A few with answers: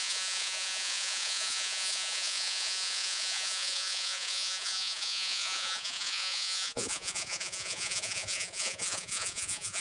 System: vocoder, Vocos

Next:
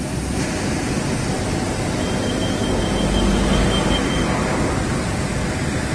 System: none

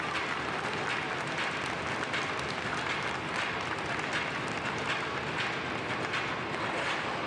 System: none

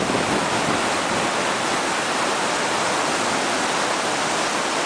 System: none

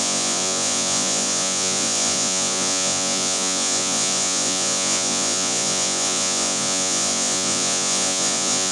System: vocoder, Vocos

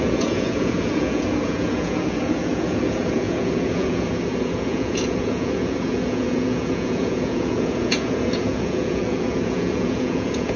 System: vocoder, Vocos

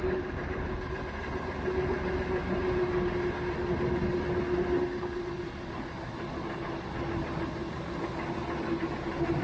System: none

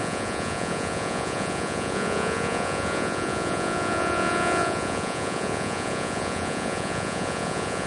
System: vocoder, Vocos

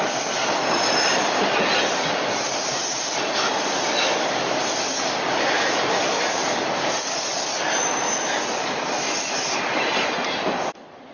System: none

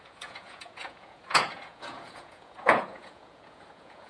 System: vocoder, Vocos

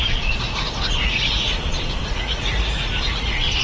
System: vocoder, Vocos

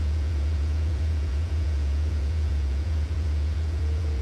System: vocoder, Vocos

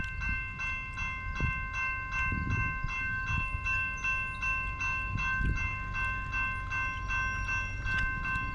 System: none